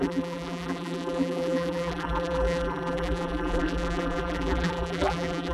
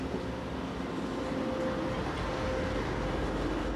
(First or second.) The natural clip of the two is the second